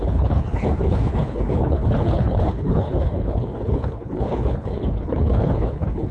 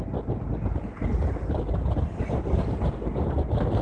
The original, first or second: second